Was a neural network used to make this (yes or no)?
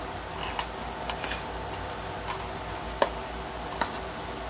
no